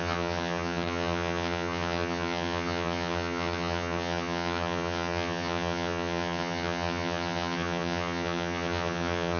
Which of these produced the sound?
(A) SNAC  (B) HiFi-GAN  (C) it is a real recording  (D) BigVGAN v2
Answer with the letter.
B